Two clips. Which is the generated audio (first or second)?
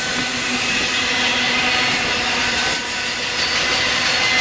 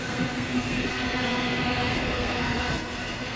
second